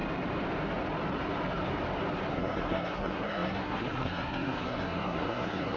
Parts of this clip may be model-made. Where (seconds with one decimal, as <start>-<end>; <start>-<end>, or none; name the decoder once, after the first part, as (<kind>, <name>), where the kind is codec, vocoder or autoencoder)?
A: 2.3-5.8 (codec, SNAC)